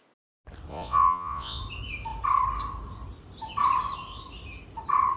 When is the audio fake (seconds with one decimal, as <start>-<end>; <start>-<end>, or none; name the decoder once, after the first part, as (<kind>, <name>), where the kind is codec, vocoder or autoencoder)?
0.7-1.6 (vocoder, Vocos)